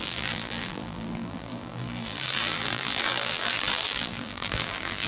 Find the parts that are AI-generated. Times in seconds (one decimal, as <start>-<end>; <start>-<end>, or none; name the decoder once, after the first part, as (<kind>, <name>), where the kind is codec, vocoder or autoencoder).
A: 0.0-5.1 (vocoder, BigVGAN v2)